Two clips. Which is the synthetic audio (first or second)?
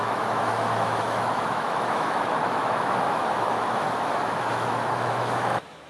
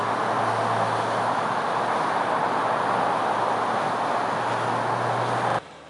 first